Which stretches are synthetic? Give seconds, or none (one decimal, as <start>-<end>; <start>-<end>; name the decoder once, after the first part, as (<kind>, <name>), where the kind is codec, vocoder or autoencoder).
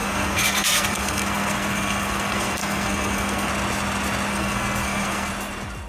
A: 0.0-3.5 (codec, SNAC); 4.3-5.3